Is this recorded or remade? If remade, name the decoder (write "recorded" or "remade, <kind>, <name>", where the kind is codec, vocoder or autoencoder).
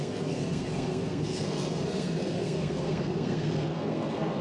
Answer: remade, codec, SNAC